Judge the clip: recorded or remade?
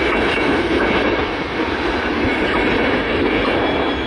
recorded